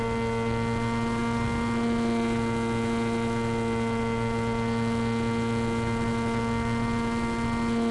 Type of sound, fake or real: real